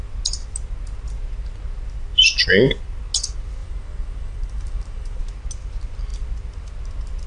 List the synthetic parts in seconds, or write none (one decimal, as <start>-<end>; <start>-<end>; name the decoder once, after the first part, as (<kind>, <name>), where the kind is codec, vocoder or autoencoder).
3.6-5.2 (vocoder, BigVGAN v2)